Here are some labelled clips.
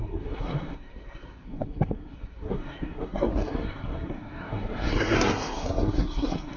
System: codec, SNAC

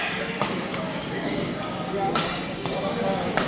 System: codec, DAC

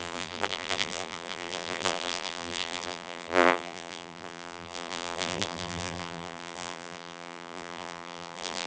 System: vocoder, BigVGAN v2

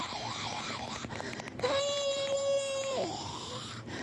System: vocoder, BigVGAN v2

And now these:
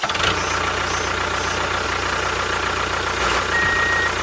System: none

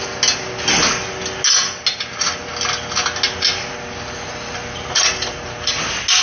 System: none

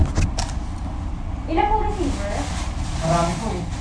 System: none